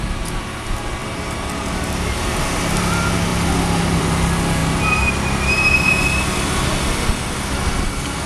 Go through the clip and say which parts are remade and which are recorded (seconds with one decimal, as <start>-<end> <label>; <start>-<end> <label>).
0.0-8.3 recorded